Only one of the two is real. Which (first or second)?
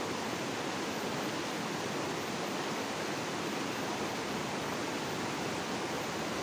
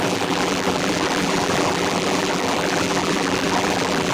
first